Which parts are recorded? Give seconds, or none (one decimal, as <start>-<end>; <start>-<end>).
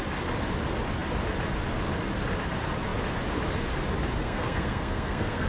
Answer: 0.0-4.2